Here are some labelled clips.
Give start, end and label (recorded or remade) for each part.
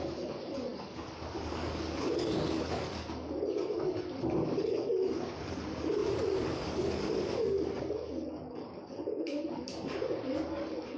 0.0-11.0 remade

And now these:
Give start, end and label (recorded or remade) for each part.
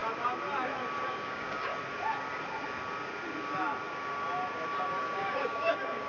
0.0-1.1 recorded; 1.1-1.7 remade; 1.7-5.0 recorded; 5.0-6.1 remade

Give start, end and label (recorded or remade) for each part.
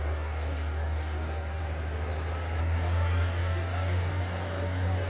0.0-1.6 remade; 1.6-2.6 recorded; 2.6-5.1 remade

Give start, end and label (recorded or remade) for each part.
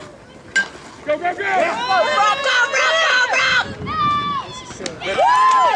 0.0-5.8 recorded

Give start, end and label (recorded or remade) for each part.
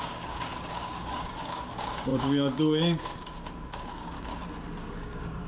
0.0-4.3 remade; 4.3-4.9 recorded; 4.9-5.5 remade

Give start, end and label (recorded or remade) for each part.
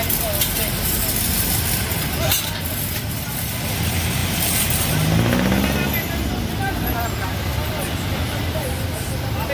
0.0-9.5 recorded